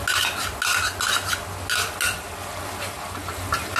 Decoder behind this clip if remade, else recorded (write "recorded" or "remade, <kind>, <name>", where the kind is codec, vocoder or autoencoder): recorded